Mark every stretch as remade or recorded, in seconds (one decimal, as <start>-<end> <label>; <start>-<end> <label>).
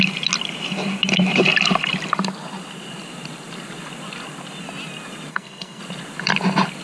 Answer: 0.0-5.3 recorded; 5.3-5.8 remade; 5.8-6.8 recorded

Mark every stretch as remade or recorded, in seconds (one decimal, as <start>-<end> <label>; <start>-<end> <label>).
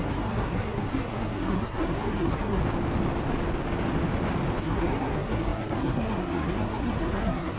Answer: 0.0-2.6 remade; 2.6-4.6 recorded; 4.6-7.6 remade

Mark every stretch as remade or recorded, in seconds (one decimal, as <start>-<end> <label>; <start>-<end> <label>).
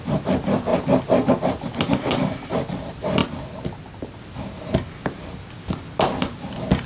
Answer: 0.0-6.9 recorded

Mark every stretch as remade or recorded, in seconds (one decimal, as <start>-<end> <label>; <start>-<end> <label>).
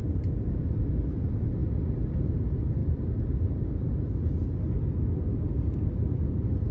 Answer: 0.0-6.7 recorded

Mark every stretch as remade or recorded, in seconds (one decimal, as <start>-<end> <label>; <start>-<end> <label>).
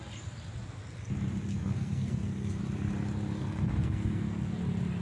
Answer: 0.0-1.5 recorded; 1.5-2.6 remade; 2.6-3.4 recorded; 3.4-4.6 remade; 4.6-5.0 recorded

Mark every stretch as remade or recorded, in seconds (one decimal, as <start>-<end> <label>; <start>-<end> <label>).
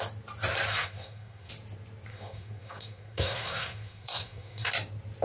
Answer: 0.0-0.7 recorded; 0.7-1.5 remade; 1.5-2.1 recorded; 2.1-4.7 remade; 4.7-5.2 recorded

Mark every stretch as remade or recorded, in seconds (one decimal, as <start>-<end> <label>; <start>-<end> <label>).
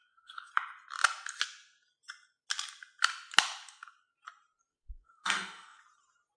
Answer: 0.0-0.5 remade; 0.5-4.7 recorded; 4.7-5.8 remade; 5.8-6.4 recorded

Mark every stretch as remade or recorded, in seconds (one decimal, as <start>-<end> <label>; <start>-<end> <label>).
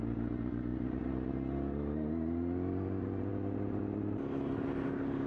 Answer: 0.0-5.3 recorded